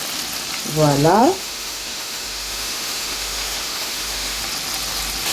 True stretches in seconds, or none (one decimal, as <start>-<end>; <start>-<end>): 0.0-1.2; 4.4-5.3